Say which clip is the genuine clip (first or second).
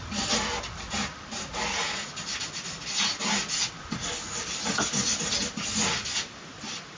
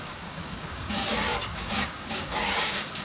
first